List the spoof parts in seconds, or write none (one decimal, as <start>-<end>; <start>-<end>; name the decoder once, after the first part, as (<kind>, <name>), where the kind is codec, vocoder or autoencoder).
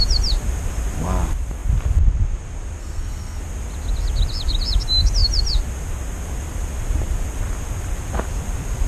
2.8-3.4 (codec, SNAC)